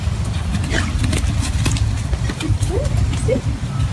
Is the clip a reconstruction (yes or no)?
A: no